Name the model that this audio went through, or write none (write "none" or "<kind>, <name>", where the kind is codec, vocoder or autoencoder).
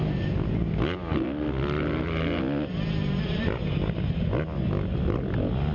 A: none